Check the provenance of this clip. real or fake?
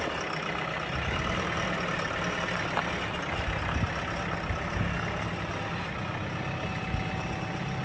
real